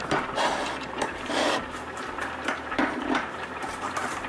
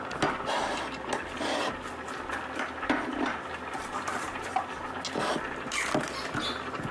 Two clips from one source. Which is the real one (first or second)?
second